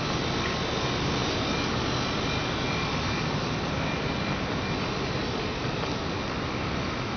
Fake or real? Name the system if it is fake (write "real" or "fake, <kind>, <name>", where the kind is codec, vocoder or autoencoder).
real